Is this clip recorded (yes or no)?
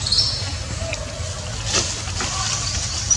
yes